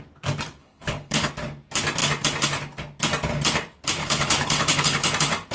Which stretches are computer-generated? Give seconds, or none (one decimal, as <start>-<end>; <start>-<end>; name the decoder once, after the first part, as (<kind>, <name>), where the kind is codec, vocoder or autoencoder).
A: 0.6-1.3 (codec, HILCodec); 4.0-5.0